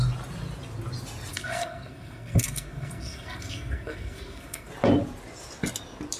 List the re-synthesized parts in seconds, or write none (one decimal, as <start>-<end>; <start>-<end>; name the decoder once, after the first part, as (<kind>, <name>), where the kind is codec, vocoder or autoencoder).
1.3-4.7 (codec, SNAC)

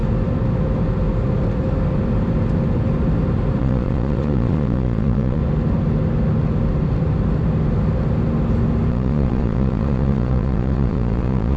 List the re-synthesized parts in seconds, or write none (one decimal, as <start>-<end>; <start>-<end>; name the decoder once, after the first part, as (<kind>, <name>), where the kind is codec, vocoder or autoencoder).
3.6-5.4 (vocoder, Vocos); 8.9-11.6

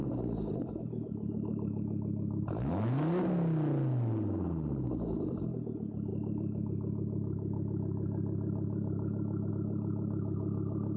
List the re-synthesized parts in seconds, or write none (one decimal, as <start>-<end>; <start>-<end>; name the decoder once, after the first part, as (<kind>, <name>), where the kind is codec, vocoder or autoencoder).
none

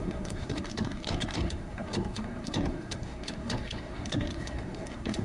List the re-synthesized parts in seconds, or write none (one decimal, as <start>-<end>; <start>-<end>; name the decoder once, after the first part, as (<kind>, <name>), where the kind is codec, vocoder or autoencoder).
0.0-5.2 (codec, SNAC)

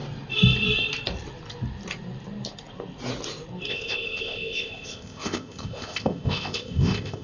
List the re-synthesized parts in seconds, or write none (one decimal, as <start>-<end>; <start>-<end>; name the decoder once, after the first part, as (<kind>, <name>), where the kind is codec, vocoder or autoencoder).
3.7-7.2 (codec, ZipCodec)

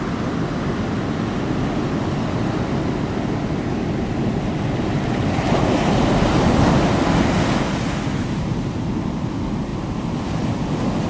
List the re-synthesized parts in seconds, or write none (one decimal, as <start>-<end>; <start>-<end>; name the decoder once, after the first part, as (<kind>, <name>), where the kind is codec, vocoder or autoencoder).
none